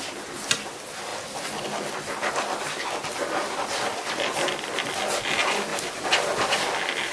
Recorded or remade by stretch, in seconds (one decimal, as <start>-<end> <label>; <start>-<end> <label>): 0.0-5.7 recorded; 5.7-6.5 remade; 6.5-7.1 recorded